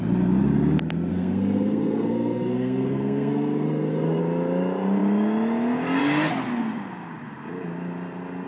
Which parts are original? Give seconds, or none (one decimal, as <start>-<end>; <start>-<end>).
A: 0.0-1.1; 4.2-8.5